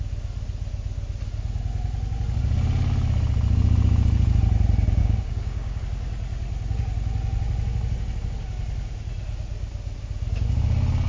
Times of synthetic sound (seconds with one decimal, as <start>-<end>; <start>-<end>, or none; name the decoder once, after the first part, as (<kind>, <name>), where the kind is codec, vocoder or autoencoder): 5.0-5.8 (codec, DAC)